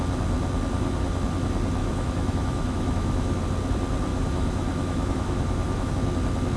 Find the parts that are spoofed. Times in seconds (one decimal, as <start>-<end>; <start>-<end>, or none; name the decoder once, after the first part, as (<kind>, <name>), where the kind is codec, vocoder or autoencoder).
1.8-3.4 (autoencoder, DAC-VAE); 4.1-5.9